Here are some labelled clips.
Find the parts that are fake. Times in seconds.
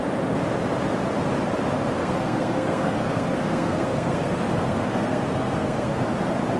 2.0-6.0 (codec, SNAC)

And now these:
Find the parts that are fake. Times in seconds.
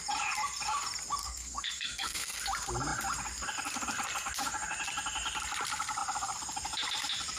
1.2-2.4 (codec, SNAC)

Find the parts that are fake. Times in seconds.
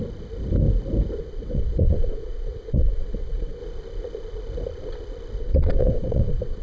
1.2-3.6 (vocoder, WaveNeXt); 5.4-6.6